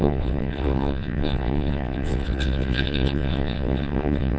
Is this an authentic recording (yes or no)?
no